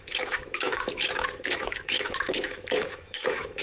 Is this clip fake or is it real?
fake